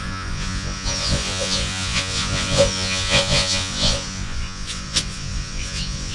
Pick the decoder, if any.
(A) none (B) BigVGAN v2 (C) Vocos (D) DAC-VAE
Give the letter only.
C